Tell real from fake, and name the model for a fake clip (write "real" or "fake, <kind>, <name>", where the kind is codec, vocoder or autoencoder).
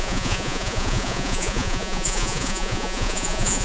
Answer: fake, vocoder, Vocos